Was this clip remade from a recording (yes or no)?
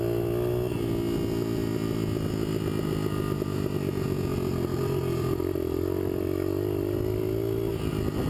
no